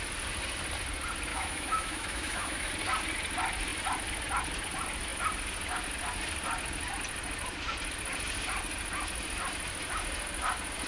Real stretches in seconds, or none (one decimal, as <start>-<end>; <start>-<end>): 0.0-1.3; 2.7-10.9